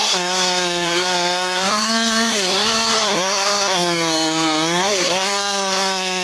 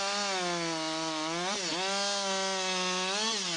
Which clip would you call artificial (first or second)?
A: first